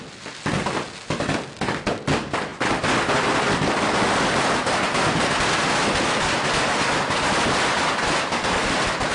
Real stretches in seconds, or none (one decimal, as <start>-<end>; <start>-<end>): 0.0-9.1